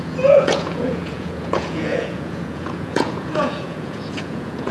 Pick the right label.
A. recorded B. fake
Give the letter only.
B